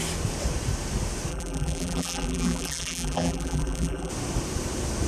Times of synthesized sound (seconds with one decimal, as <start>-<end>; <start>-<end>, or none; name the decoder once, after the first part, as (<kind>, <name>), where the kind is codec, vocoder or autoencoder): 1.3-4.1 (vocoder, BigVGAN v2)